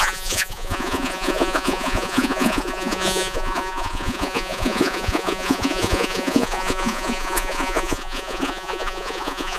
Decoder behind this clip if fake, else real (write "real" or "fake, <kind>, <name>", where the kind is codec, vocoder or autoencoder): fake, vocoder, Vocos